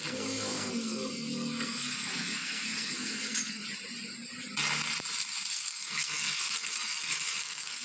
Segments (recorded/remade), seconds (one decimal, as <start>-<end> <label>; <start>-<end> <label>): 0.0-3.6 remade; 3.6-5.5 recorded; 5.5-7.8 remade